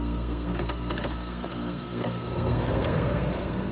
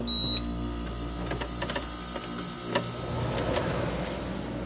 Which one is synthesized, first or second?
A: first